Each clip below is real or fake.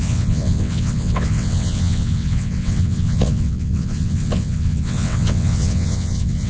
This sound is fake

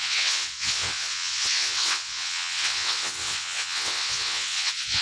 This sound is fake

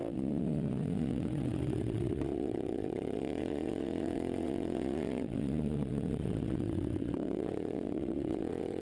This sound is fake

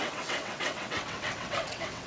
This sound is fake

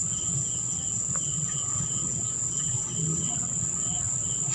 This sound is fake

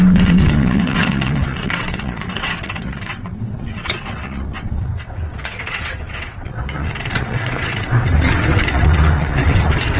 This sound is fake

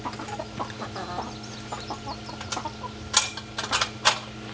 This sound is real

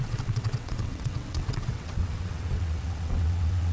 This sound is fake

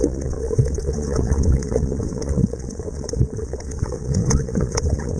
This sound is fake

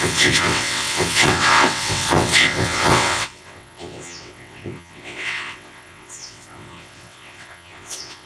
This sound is fake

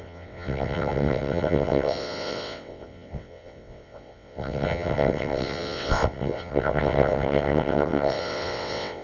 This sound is fake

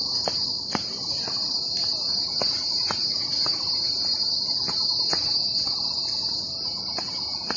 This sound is real